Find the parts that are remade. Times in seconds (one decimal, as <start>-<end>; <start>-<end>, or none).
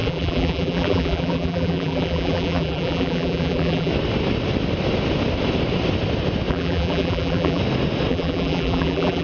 0.0-3.9; 6.5-7.6; 8.1-9.2